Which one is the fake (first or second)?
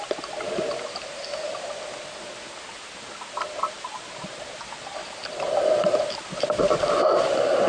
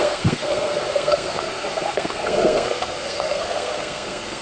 second